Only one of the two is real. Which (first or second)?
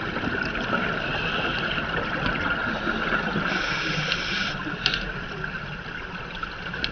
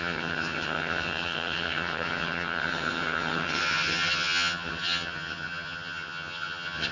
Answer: first